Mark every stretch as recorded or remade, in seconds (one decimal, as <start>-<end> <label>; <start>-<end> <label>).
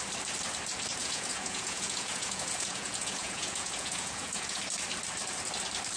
0.0-1.0 recorded; 1.0-4.6 remade; 4.6-6.0 recorded